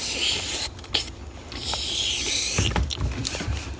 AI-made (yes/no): no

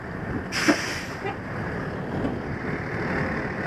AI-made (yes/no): no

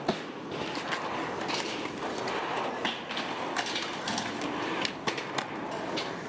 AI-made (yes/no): no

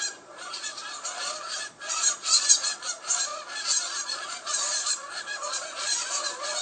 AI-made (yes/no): yes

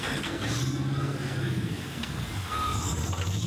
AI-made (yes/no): yes